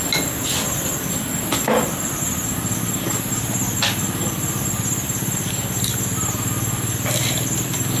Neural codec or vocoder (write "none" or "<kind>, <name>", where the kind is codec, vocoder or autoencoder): none